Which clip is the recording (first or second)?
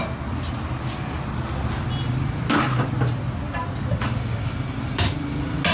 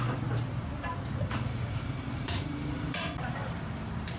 first